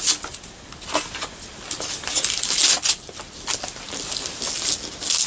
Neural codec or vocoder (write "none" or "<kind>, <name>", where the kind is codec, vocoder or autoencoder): none